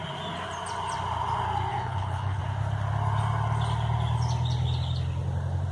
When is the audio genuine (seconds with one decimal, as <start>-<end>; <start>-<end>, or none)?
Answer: 0.0-1.7; 2.4-5.7